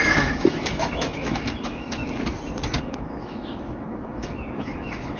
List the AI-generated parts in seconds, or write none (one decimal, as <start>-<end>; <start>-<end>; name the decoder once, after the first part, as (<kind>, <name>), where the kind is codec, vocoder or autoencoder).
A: 0.0-2.0 (autoencoder, DAC-VAE); 2.8-5.2